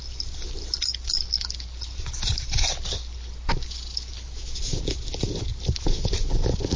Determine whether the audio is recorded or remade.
recorded